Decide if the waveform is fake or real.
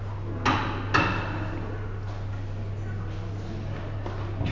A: real